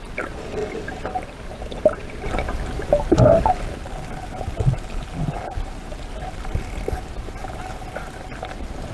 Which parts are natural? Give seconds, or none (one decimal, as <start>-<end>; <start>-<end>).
0.0-8.9